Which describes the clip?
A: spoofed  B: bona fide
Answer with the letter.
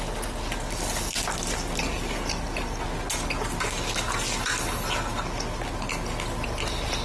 B